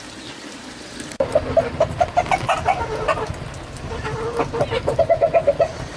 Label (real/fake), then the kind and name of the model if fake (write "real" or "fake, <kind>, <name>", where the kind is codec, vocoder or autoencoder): real